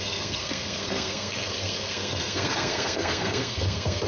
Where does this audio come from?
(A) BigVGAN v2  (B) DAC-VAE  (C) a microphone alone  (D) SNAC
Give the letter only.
D